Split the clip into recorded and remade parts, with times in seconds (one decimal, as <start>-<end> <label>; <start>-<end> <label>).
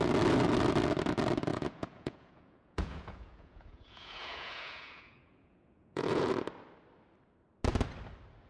0.0-1.5 recorded; 1.5-6.3 remade; 6.3-8.5 recorded